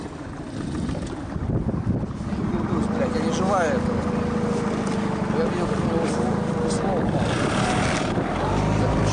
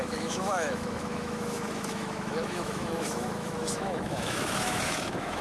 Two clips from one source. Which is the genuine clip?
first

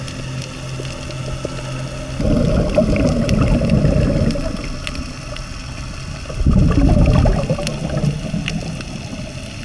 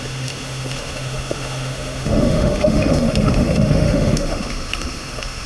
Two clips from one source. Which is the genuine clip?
first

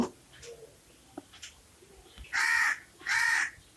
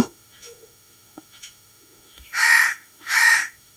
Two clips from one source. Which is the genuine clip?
first